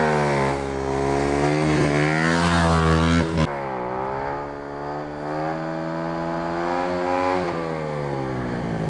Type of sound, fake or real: real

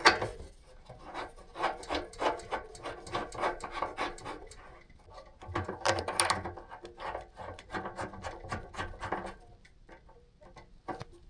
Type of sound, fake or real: real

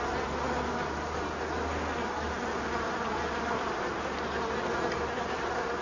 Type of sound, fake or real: real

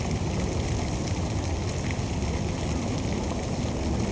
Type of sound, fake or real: real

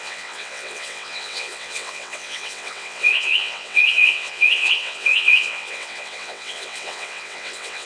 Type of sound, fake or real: fake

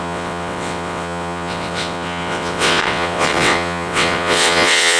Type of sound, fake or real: fake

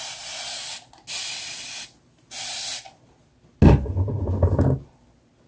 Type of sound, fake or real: real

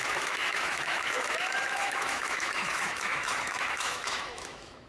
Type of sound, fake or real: fake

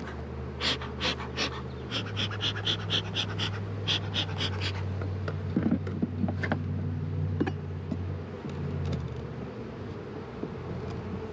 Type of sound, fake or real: real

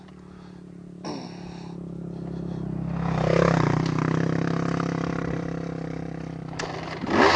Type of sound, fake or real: real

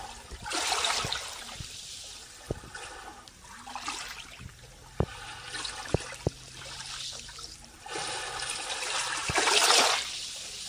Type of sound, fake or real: real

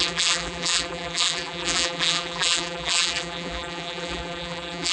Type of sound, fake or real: fake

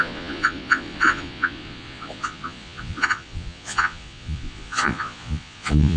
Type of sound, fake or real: fake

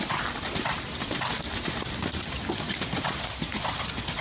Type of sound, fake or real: real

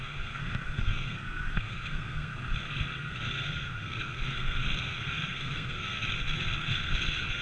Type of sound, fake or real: fake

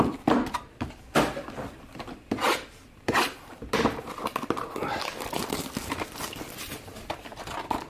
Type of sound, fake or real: fake